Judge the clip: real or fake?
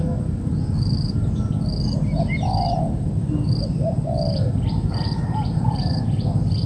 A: real